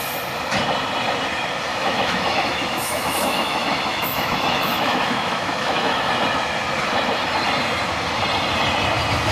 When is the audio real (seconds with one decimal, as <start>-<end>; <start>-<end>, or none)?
0.0-1.7; 6.1-9.3